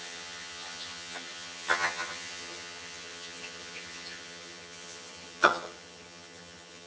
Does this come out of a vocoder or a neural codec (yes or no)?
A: yes